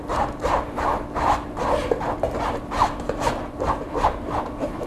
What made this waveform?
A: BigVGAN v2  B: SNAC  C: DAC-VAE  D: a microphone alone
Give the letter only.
D